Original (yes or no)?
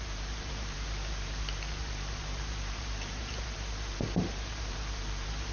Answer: no